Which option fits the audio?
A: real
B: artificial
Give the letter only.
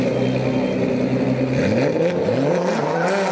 A